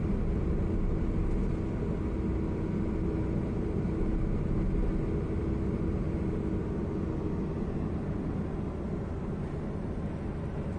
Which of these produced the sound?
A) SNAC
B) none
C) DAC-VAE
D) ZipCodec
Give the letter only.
B